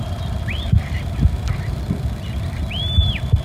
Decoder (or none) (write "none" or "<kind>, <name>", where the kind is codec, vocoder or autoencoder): none